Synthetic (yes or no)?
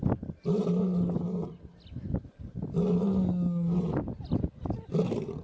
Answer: no